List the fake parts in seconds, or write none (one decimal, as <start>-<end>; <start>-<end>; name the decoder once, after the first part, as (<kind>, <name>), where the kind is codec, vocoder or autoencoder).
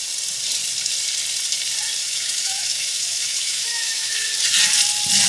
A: 2.0-4.3 (autoencoder, DAC-VAE)